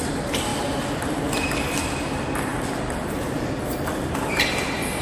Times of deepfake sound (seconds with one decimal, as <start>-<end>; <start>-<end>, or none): none